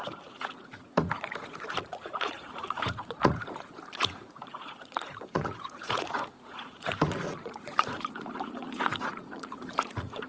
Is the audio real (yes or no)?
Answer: no